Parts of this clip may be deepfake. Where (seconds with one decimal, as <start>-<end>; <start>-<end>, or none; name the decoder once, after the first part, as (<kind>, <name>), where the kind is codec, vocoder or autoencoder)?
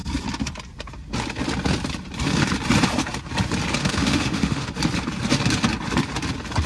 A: 3.8-4.7 (autoencoder, DAC-VAE)